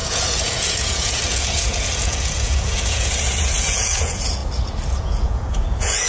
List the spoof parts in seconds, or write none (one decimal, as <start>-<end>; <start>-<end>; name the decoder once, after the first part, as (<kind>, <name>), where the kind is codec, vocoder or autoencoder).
0.0-4.4 (vocoder, Vocos); 5.0-6.1